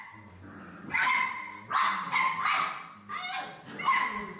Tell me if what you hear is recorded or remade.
recorded